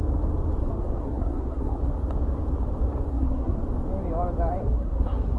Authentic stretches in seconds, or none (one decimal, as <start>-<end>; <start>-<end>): 0.0-0.6; 1.8-3.1; 3.6-4.6